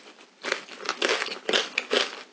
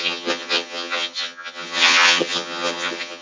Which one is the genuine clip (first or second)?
first